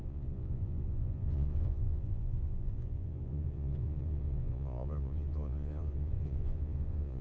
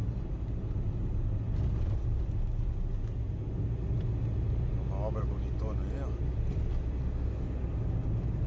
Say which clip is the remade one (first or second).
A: first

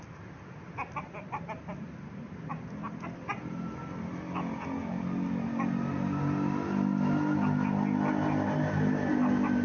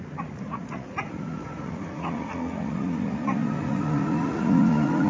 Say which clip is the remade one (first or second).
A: second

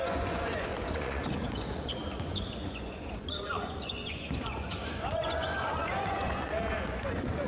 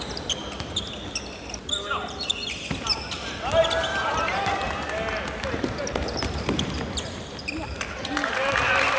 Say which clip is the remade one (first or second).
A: first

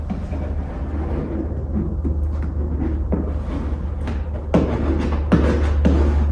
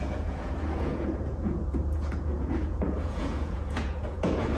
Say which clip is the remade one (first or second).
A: second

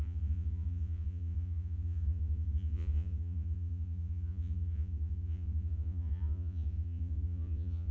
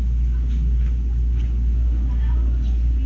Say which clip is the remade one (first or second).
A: first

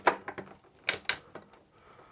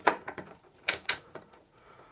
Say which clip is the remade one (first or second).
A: second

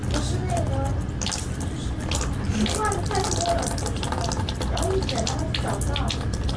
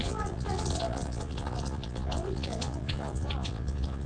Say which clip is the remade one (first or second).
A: second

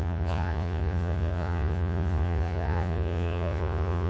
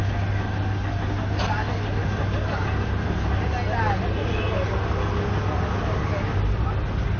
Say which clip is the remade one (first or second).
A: first